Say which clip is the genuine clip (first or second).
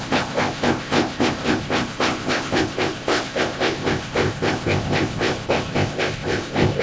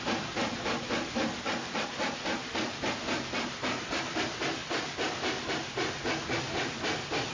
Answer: second